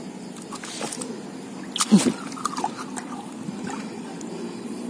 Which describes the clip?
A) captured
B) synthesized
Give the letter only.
A